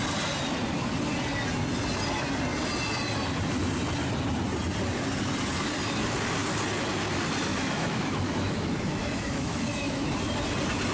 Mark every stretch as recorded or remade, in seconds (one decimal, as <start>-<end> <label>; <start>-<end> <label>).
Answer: 0.0-7.5 recorded; 7.5-10.2 remade; 10.2-10.9 recorded